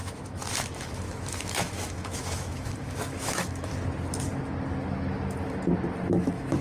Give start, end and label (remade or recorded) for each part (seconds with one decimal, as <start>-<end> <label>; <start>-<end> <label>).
0.0-3.7 remade; 3.7-6.1 recorded; 6.1-6.6 remade